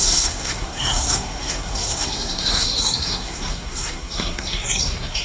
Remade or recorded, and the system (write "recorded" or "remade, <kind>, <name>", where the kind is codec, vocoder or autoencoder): remade, codec, SNAC